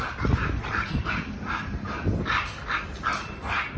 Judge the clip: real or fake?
real